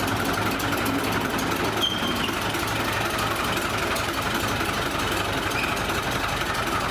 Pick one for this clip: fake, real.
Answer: real